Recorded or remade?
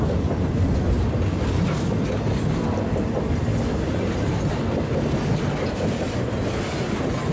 recorded